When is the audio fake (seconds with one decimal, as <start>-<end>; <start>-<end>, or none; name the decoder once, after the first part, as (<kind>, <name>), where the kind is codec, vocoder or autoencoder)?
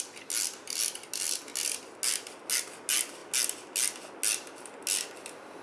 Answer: none